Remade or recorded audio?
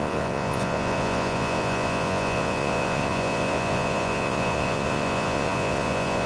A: remade